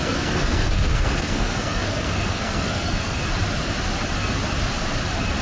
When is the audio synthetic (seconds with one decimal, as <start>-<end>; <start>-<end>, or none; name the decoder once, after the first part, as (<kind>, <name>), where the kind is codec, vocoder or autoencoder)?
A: 0.0-3.2 (codec, SNAC)